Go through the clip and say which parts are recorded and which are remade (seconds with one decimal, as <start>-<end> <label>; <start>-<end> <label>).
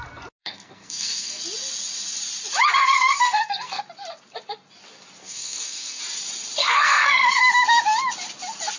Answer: 0.0-0.4 recorded; 0.4-1.4 remade; 1.4-2.8 recorded; 2.8-3.8 remade; 3.8-5.2 recorded; 5.2-6.0 remade; 6.0-6.6 recorded; 6.6-7.4 remade; 7.4-8.8 recorded